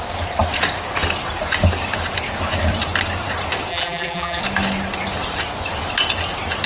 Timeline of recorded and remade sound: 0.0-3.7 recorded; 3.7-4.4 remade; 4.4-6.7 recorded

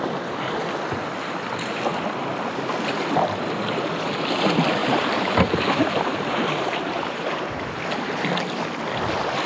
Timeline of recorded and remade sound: 0.0-4.8 recorded; 4.8-7.7 remade; 7.7-9.5 recorded

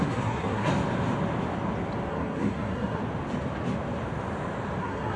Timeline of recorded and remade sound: 0.0-0.7 remade; 0.7-2.1 recorded; 2.1-3.0 remade; 3.0-4.8 recorded; 4.8-5.2 remade

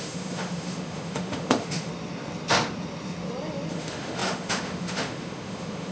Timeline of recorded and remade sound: 0.0-1.9 remade; 1.9-3.7 recorded; 3.7-5.9 remade

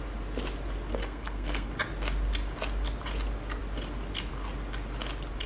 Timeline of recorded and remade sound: 0.0-0.9 recorded; 0.9-1.7 remade; 1.7-5.5 recorded

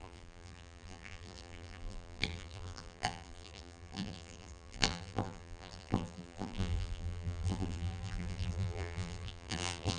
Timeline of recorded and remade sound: 0.0-10.0 remade